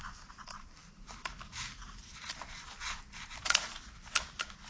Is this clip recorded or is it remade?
recorded